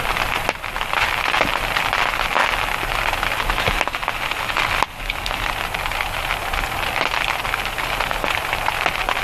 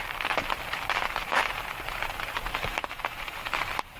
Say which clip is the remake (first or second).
second